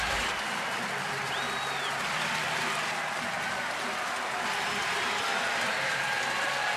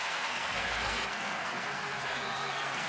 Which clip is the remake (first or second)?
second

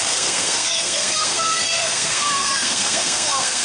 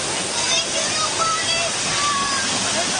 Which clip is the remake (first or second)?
first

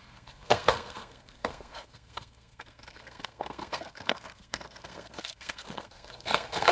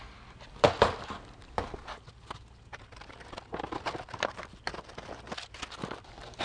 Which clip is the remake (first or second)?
first